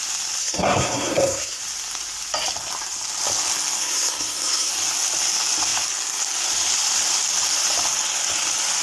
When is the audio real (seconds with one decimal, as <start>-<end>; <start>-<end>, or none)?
0.0-0.4; 1.6-3.8; 4.7-8.8